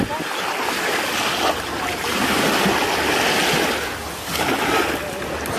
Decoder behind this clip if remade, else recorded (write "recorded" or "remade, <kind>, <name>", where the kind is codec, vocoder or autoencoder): recorded